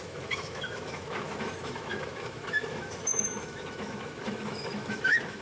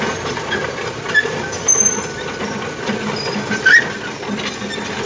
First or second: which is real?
second